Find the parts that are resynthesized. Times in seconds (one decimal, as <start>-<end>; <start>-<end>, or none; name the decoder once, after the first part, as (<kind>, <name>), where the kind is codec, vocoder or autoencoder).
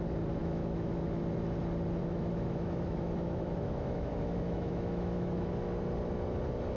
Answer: 0.4-1.2 (autoencoder, DAC-VAE); 2.0-5.5